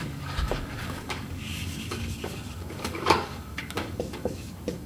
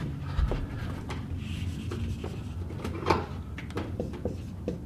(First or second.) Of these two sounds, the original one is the second